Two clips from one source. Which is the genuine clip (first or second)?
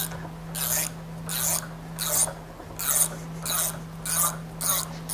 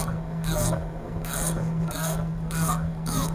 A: first